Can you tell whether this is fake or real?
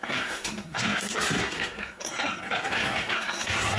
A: fake